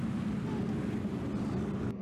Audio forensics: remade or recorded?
recorded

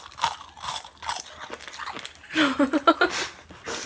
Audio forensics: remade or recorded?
recorded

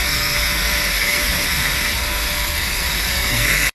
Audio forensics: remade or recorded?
remade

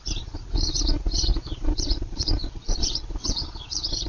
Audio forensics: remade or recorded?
remade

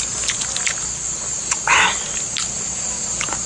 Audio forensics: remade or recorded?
recorded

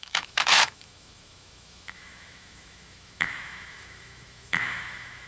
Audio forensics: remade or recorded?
remade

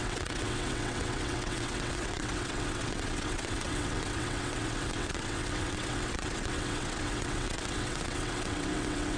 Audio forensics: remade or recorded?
remade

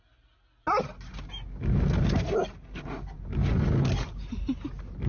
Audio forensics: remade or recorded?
recorded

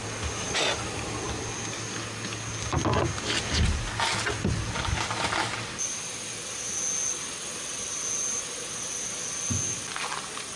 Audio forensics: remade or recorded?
recorded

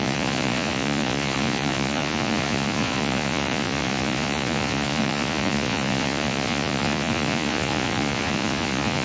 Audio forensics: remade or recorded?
remade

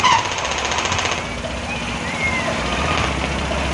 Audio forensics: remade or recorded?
recorded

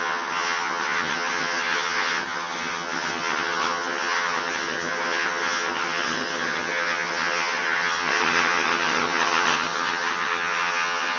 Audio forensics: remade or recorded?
remade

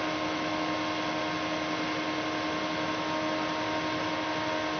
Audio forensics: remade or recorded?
recorded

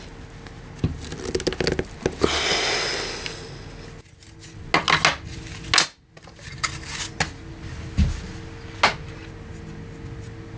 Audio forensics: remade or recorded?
recorded